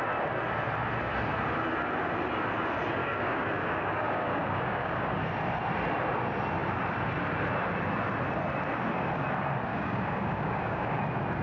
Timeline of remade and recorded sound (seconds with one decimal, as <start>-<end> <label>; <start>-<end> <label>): 0.0-3.0 recorded; 3.0-5.2 remade; 5.2-9.7 recorded; 9.7-11.0 remade; 11.0-11.4 recorded